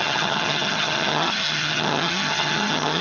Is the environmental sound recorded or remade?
remade